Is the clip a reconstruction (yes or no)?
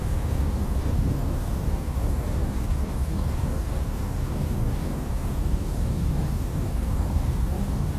yes